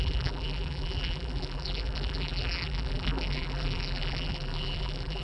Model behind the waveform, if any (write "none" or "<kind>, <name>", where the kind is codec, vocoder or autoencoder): vocoder, BigVGAN v2